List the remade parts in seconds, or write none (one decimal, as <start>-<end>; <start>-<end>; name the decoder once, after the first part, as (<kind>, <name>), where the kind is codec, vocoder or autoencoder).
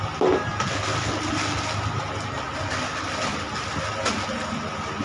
none